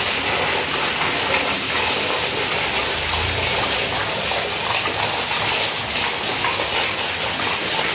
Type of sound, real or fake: real